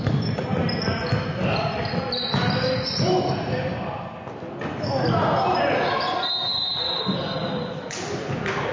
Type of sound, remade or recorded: recorded